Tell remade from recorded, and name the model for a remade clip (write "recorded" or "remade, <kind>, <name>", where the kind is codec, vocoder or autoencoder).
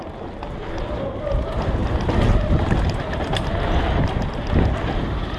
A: recorded